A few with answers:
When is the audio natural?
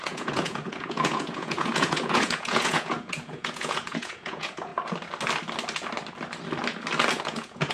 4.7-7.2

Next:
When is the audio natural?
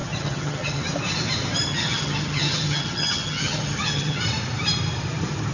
0.8-1.7; 4.2-5.5